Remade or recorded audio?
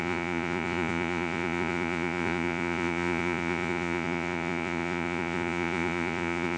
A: remade